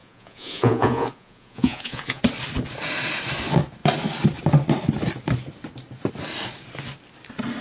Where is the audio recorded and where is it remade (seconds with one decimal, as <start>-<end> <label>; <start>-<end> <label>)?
0.0-2.2 remade; 2.2-7.6 recorded